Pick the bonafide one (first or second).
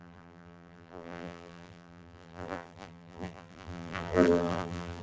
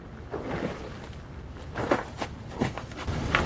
second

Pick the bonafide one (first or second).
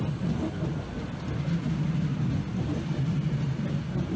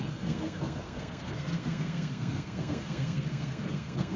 first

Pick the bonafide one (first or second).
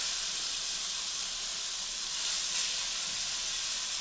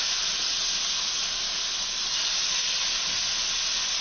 second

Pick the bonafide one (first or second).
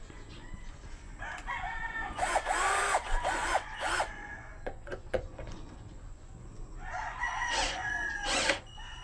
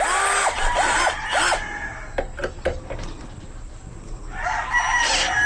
second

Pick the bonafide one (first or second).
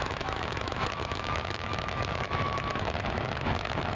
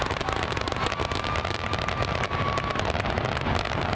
second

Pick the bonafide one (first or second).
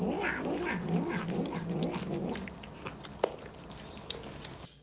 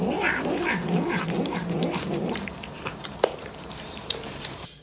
first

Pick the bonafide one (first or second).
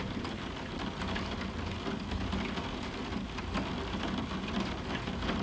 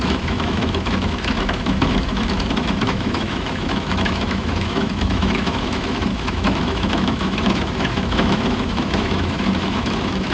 first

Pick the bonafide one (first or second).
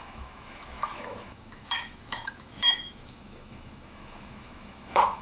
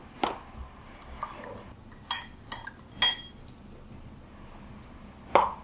second